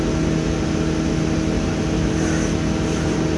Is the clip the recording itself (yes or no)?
yes